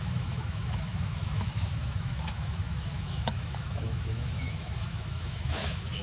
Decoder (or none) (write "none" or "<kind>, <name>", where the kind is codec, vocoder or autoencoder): autoencoder, DAC-VAE